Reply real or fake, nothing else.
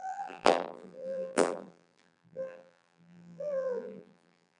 fake